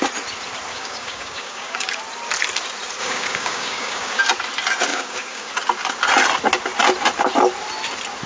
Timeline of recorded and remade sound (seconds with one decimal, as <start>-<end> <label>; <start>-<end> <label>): 0.0-0.7 recorded; 0.7-2.0 remade; 2.0-3.0 recorded; 3.0-4.2 remade; 4.2-4.9 recorded; 4.9-5.5 remade; 5.5-8.3 recorded